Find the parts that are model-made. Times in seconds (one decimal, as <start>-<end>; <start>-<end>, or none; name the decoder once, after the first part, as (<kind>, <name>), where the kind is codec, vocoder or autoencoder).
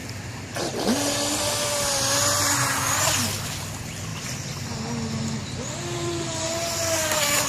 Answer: 0.0-0.7 (vocoder, BigVGAN v2); 4.1-4.7